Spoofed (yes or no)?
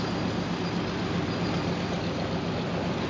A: no